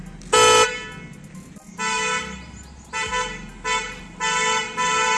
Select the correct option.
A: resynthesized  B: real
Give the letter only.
B